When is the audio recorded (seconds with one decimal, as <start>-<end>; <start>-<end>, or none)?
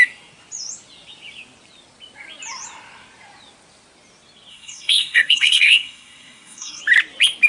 0.0-4.5; 6.8-7.5